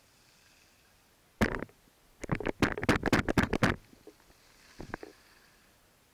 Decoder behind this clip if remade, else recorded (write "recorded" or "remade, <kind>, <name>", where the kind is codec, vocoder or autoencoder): recorded